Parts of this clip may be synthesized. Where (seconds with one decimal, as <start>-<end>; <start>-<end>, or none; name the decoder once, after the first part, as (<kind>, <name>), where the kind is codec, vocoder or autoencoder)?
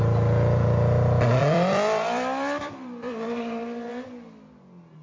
1.4-3.9 (vocoder, BigVGAN v2)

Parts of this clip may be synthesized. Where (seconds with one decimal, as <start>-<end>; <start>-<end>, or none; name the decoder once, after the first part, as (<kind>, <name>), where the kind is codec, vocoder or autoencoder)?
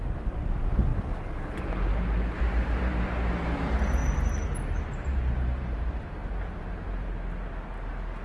4.0-7.1 (vocoder, BigVGAN v2)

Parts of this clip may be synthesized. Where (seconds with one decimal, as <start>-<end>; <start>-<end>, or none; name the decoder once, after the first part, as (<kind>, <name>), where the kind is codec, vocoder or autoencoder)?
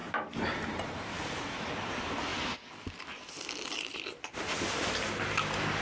0.0-2.3 (vocoder, BigVGAN v2)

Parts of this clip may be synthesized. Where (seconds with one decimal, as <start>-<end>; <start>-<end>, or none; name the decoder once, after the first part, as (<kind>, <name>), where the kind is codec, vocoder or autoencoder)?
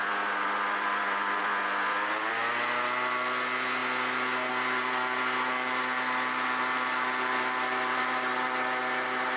0.0-3.8 (vocoder, BigVGAN v2); 4.5-9.4